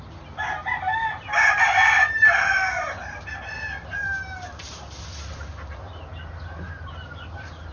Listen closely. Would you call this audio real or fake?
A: real